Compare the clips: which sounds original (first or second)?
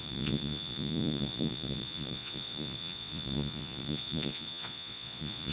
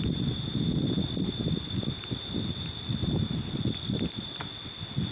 second